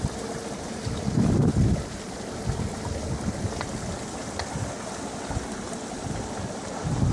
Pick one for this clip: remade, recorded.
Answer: recorded